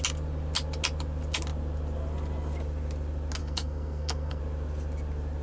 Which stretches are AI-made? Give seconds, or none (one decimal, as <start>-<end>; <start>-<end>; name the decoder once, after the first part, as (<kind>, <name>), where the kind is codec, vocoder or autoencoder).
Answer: 3.4-4.4 (codec, SNAC)